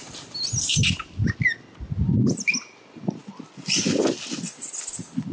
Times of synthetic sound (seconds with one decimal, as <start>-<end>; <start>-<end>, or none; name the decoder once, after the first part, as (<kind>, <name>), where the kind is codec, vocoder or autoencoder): none